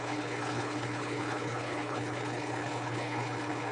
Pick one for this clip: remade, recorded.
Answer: remade